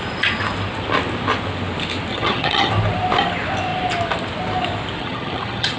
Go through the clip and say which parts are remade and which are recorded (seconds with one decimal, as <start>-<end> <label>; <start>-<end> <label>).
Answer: 0.0-2.1 recorded; 2.1-2.7 remade; 2.7-5.0 recorded; 5.0-5.8 remade